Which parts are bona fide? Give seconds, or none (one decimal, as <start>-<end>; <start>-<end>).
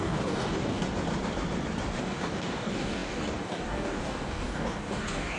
0.8-2.0